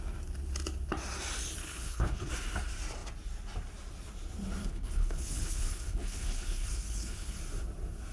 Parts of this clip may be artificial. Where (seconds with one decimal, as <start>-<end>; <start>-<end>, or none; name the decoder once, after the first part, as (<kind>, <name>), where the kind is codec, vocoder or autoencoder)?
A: 1.6-2.3 (codec, HILCodec); 4.6-7.4